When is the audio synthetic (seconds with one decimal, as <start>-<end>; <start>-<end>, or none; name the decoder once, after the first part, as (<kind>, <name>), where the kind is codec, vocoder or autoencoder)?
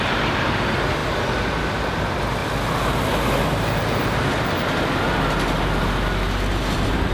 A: none